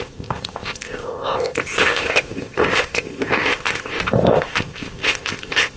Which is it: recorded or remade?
remade